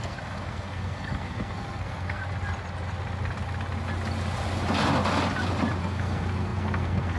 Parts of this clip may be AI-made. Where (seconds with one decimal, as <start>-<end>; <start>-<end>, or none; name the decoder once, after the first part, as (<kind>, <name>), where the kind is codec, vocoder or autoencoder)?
0.0-2.2 (codec, SNAC); 5.8-7.2